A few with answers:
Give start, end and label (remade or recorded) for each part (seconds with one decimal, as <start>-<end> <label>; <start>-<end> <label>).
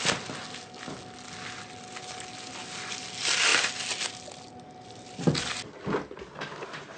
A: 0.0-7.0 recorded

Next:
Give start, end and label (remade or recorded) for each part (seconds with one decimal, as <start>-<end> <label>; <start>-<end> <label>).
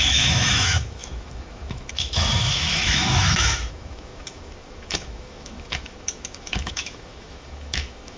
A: 0.0-8.2 remade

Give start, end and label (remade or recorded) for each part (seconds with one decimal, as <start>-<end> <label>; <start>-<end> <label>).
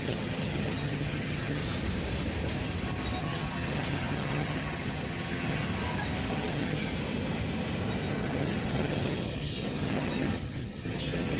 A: 0.0-1.6 remade; 1.6-3.2 recorded; 3.2-5.7 remade; 5.7-6.3 recorded; 6.3-6.9 remade; 6.9-8.1 recorded; 8.1-11.4 remade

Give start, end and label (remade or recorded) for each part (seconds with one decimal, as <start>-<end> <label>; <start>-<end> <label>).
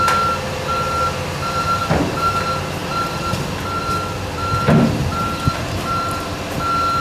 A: 0.0-7.0 recorded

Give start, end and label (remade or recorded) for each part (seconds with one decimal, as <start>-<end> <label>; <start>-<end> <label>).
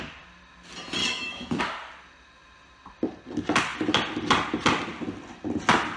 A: 0.0-1.0 recorded; 1.0-1.6 remade; 1.6-6.0 recorded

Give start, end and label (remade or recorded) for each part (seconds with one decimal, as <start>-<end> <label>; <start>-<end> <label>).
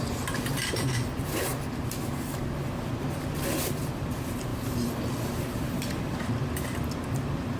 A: 0.0-1.5 remade; 1.5-3.6 recorded; 3.6-7.6 remade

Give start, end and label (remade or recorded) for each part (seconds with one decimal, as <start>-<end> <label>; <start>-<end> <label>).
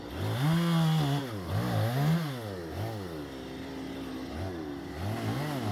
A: 0.0-5.7 recorded